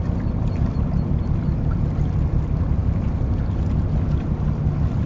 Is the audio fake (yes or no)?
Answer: no